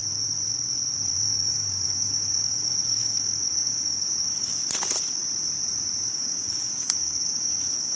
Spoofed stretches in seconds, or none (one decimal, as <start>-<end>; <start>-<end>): 1.1-4.6; 6.1-8.0